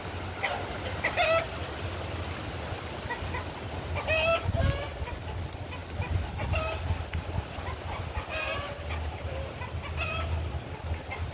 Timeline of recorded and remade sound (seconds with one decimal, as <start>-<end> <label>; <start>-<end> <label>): 0.0-11.3 recorded